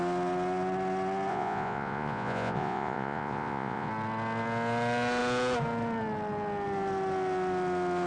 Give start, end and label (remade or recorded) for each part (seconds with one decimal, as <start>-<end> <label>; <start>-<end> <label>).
0.0-1.3 recorded; 1.3-3.9 remade; 3.9-8.1 recorded